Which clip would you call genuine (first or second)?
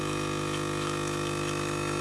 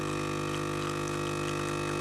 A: second